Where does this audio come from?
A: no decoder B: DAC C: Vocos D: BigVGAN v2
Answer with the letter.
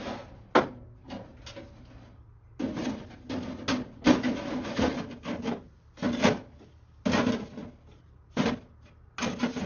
A